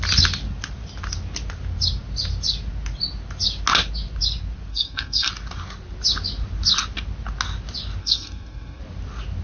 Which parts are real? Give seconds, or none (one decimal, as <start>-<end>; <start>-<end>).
0.0-4.7; 5.3-8.0; 8.8-9.4